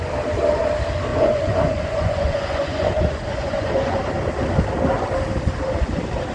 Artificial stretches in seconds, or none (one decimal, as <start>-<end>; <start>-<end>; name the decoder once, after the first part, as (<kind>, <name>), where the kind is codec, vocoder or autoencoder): 1.1-4.0 (vocoder, Vocos)